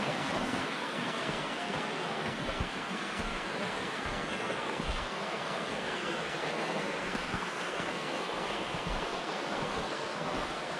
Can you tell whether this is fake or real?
fake